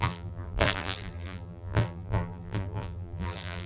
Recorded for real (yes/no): no